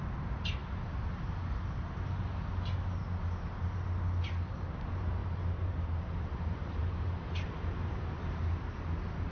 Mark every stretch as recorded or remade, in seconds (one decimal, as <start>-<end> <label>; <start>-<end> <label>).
0.0-5.2 recorded; 5.2-8.8 remade; 8.8-9.3 recorded

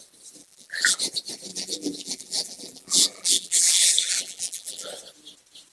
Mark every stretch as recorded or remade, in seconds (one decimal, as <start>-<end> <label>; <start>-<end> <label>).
0.0-0.4 recorded; 0.4-1.0 remade; 1.0-1.5 recorded; 1.5-4.9 remade; 4.9-5.7 recorded

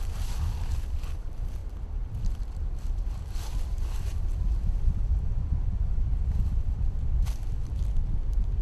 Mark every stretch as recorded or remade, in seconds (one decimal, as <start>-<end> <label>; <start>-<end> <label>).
0.0-1.6 remade; 1.6-2.2 recorded; 2.2-4.1 remade; 4.1-7.2 recorded; 7.2-8.6 remade

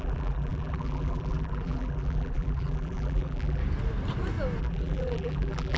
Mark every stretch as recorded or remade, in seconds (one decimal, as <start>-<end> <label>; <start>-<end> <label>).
0.0-3.6 remade; 3.6-4.6 recorded; 4.6-5.8 remade

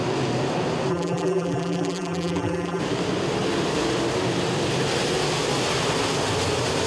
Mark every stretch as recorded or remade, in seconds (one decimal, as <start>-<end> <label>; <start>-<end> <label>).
0.0-0.9 recorded; 0.9-2.8 remade; 2.8-6.9 recorded

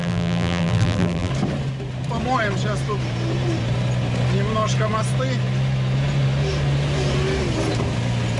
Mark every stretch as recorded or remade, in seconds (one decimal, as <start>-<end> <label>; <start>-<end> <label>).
0.0-1.3 remade; 1.3-8.4 recorded

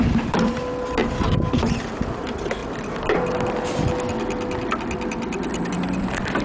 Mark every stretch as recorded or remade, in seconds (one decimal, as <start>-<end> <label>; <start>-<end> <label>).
0.0-0.6 remade; 0.6-1.1 recorded; 1.1-2.6 remade; 2.6-5.7 recorded; 5.7-6.4 remade

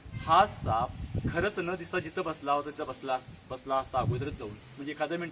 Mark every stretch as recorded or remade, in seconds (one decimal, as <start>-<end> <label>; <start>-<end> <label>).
0.0-5.3 recorded